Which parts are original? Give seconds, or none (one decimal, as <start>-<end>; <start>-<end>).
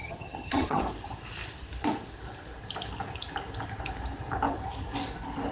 0.8-5.5